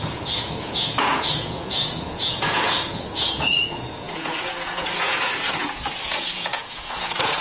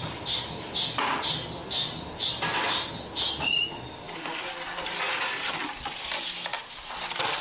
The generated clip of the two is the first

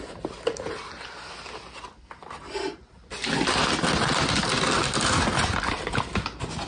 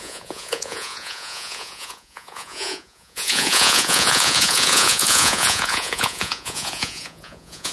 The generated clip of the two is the second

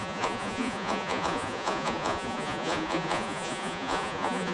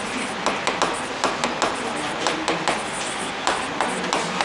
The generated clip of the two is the first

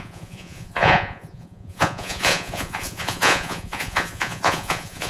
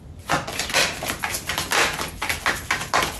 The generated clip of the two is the first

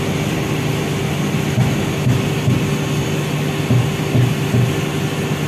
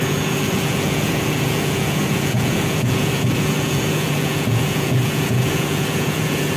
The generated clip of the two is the second